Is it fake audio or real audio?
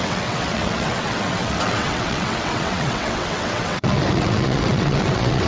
fake